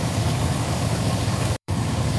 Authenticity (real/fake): fake